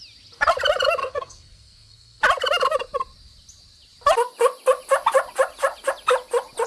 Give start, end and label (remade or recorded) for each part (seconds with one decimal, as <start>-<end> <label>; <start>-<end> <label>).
0.0-1.0 recorded; 1.0-2.2 remade; 2.2-6.7 recorded